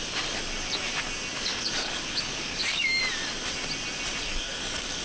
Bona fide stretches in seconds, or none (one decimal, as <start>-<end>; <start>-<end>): 0.0-1.5; 3.0-4.3